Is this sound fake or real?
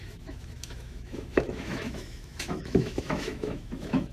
fake